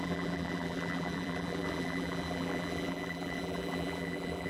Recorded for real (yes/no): no